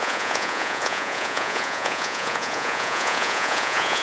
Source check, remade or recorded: remade